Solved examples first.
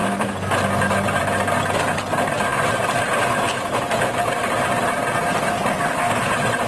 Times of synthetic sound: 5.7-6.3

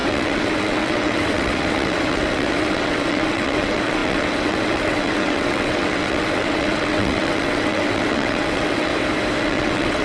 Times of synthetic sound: 0.0-8.9; 9.4-10.0

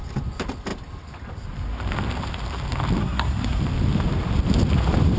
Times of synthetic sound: 3.0-3.6

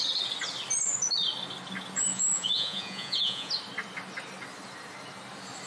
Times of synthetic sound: 2.1-3.5

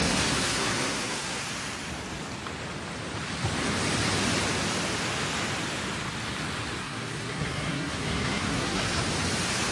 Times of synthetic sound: 0.0-1.4; 6.8-9.0

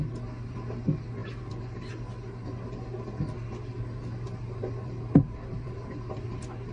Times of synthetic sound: none

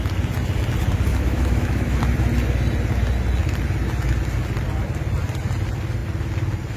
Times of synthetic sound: 1.1-2.0

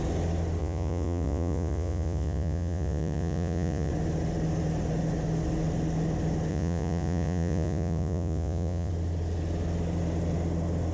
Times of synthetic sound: 0.6-3.9; 6.5-8.9